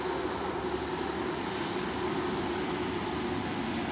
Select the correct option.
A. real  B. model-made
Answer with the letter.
A